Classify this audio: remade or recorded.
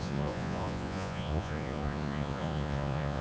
remade